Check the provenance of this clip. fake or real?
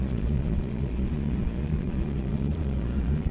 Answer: fake